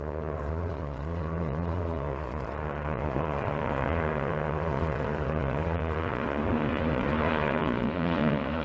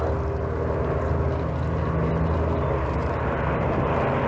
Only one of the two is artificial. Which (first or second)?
first